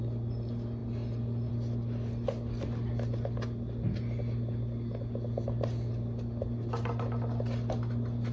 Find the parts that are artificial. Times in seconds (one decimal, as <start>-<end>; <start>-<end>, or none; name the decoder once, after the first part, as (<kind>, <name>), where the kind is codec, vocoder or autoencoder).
none